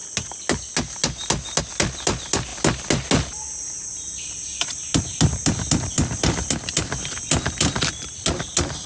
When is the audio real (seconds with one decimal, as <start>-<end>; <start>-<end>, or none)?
0.0-8.9